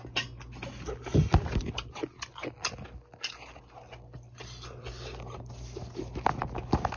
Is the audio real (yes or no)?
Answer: yes